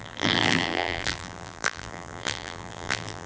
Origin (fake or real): fake